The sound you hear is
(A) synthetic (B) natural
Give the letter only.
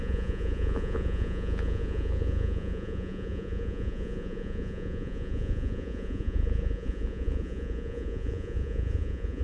A